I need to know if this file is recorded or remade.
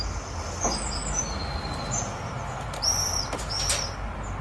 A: recorded